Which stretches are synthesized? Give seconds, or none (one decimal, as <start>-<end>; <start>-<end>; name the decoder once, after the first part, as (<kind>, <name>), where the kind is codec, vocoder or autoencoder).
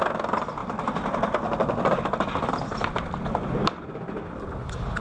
none